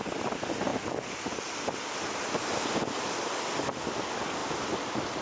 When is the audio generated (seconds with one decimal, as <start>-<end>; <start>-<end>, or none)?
none